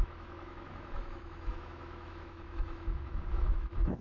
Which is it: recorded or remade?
remade